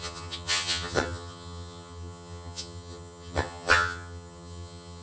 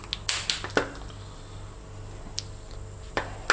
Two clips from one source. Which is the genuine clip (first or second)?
second